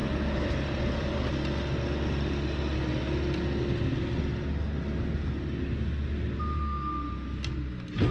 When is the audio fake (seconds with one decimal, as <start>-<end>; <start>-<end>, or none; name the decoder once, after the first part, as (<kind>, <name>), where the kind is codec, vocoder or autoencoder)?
0.0-1.3 (vocoder, BigVGAN v2)